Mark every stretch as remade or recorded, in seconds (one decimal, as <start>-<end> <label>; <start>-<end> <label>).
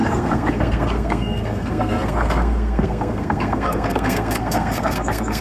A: 0.0-5.4 remade